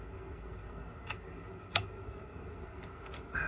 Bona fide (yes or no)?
no